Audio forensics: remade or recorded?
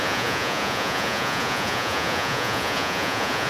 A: remade